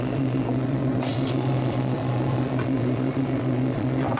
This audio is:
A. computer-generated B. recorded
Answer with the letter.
A